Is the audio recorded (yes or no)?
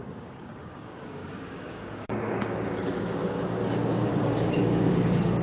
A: no